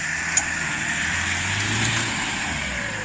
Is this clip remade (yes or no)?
no